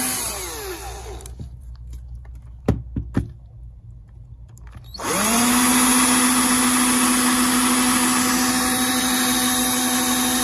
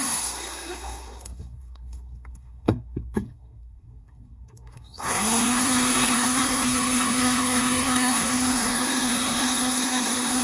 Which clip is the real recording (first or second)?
first